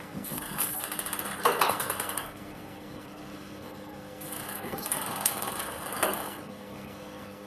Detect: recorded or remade remade